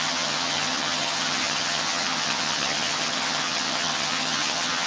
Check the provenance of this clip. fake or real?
fake